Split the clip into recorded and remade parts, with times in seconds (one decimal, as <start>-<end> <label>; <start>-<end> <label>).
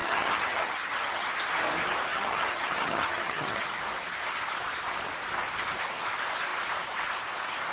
0.0-1.3 remade; 1.3-2.1 recorded; 2.1-3.8 remade; 3.8-7.7 recorded